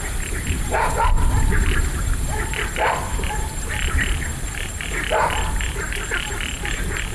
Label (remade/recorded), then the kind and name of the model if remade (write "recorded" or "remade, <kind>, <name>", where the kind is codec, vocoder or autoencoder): remade, vocoder, BigVGAN v2